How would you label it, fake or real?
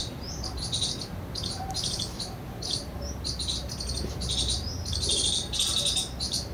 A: fake